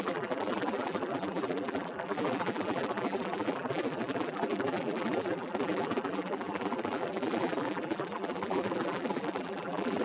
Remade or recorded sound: remade